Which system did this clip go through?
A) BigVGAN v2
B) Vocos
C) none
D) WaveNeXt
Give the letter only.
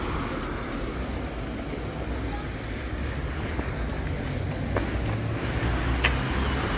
C